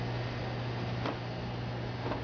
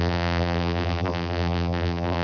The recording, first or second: first